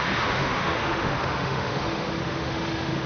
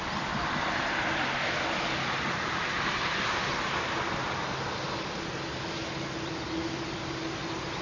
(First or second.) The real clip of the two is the second